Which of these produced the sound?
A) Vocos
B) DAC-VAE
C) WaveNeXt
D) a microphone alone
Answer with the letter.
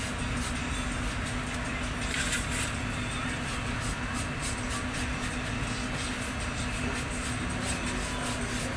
D